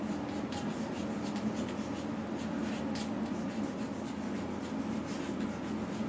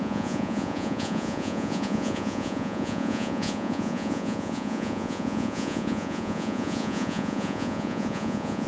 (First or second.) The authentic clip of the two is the first